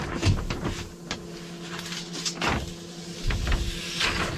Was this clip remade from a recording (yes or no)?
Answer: no